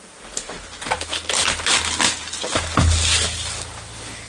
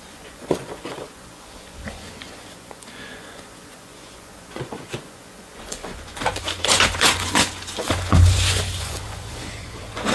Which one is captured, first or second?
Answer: first